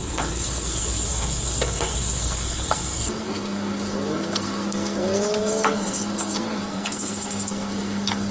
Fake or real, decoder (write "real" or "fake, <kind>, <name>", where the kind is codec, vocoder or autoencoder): fake, codec, SNAC